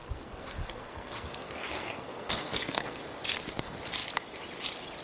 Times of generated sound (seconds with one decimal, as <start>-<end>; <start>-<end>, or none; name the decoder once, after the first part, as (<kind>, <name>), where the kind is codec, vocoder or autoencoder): 0.0-3.0 (codec, SNAC)

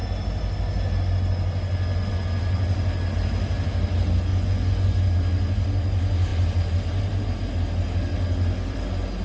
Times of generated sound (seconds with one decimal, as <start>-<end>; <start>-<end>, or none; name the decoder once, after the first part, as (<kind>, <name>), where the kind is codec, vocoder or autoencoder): 4.3-5.1 (vocoder, Vocos)

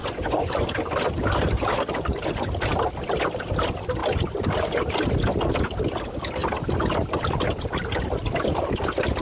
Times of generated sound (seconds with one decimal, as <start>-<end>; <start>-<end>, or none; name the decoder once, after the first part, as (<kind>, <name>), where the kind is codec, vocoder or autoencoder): 0.0-0.6 (vocoder, Vocos)

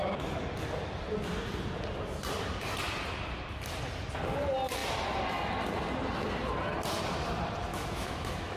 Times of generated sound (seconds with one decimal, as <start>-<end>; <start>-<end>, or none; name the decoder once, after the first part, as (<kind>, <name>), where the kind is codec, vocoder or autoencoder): 7.7-8.6 (autoencoder, DAC-VAE)

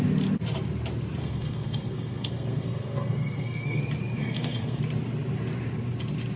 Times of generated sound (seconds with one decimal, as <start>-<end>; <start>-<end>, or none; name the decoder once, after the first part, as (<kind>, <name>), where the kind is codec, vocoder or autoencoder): 1.2-3.8 (codec, SNAC); 4.2-4.8

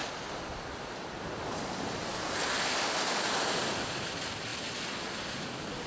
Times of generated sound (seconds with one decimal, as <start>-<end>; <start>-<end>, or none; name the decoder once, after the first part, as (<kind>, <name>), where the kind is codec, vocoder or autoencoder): none

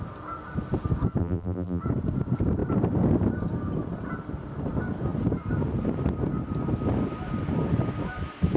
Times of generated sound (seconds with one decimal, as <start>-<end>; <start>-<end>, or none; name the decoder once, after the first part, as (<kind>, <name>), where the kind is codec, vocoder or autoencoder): 1.2-1.8 (vocoder, BigVGAN v2)

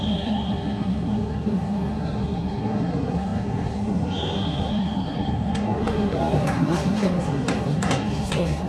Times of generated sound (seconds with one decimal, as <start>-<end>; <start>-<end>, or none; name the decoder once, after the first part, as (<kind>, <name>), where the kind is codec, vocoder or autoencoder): 0.0-8.7 (codec, SNAC)